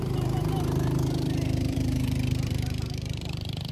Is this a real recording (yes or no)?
no